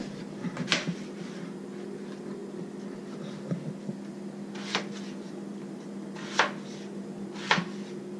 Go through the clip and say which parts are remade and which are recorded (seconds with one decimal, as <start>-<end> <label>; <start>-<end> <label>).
0.0-8.2 recorded